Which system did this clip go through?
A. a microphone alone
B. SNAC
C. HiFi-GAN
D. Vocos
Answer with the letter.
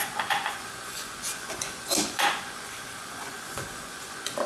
D